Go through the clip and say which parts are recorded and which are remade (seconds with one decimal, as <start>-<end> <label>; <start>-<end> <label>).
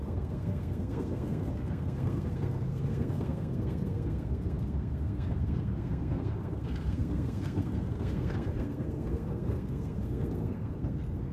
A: 0.0-11.3 remade